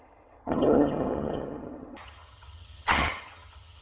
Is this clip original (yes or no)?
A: no